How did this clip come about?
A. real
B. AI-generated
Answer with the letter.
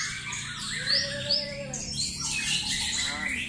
A